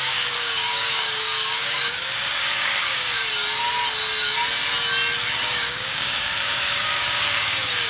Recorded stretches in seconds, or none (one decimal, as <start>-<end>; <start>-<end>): 3.2-5.4